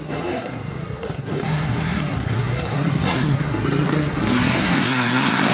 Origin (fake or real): fake